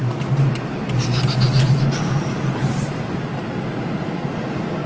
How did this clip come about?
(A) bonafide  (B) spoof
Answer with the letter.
A